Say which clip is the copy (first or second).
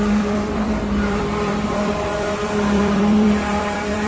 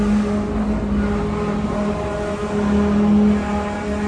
first